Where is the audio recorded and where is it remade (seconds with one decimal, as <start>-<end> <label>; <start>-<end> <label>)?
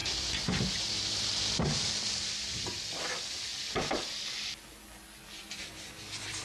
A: 0.0-6.4 recorded